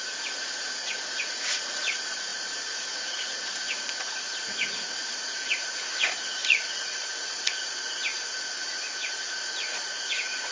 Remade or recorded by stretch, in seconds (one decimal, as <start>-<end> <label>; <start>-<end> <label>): 0.0-10.5 remade